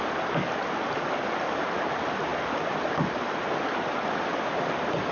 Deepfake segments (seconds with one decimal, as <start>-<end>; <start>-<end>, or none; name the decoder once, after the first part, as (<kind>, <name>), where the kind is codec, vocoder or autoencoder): none